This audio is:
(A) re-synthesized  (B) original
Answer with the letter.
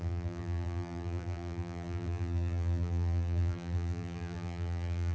A